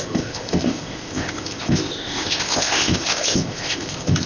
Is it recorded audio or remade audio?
remade